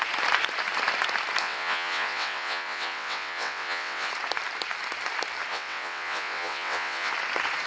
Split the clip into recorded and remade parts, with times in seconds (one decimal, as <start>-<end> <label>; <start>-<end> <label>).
0.0-1.4 recorded; 1.4-4.1 remade; 4.1-5.5 recorded; 5.5-7.1 remade; 7.1-7.7 recorded

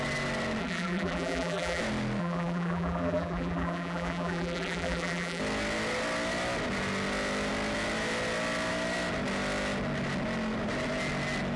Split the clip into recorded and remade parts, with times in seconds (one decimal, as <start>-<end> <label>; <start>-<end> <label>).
0.0-0.6 recorded; 0.6-1.8 remade; 1.8-2.2 recorded; 2.2-5.4 remade; 5.4-11.6 recorded

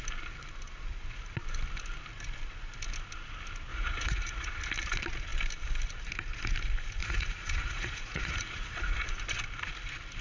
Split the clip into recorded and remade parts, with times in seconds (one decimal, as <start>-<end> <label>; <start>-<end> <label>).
0.0-3.7 recorded; 3.7-4.6 remade; 4.6-7.0 recorded; 7.0-9.2 remade; 9.2-10.2 recorded

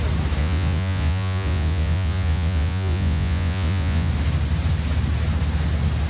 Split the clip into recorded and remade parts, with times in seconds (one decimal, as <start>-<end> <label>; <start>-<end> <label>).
0.0-0.4 recorded; 0.4-4.1 remade; 4.1-6.1 recorded